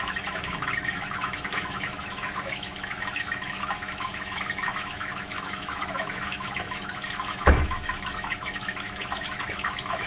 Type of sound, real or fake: fake